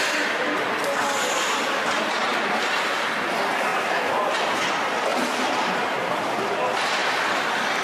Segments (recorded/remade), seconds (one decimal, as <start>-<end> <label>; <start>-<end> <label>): 0.0-2.3 recorded; 2.3-2.9 remade; 2.9-3.7 recorded; 3.7-4.6 remade; 4.6-5.1 recorded; 5.1-6.3 remade; 6.3-7.8 recorded